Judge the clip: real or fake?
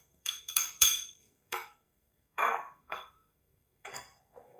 fake